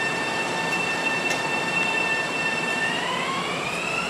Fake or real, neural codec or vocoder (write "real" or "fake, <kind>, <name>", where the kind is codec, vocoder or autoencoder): fake, vocoder, BigVGAN v2